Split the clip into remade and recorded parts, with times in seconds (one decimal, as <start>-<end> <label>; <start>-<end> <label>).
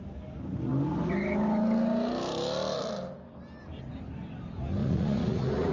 0.0-4.8 recorded; 4.8-5.7 remade